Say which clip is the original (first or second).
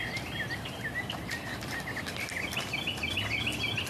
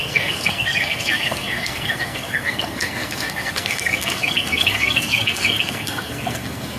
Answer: first